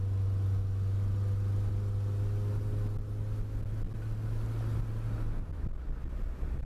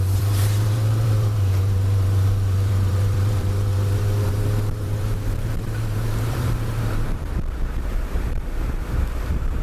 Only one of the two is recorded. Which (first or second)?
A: first